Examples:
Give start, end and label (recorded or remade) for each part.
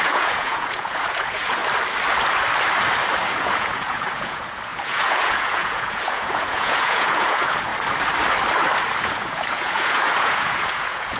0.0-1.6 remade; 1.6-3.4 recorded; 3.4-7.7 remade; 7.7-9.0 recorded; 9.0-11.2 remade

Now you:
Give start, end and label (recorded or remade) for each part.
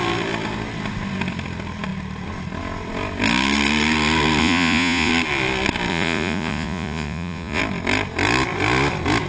0.0-4.4 recorded; 4.4-5.1 remade; 5.1-5.9 recorded; 5.9-7.6 remade; 7.6-9.3 recorded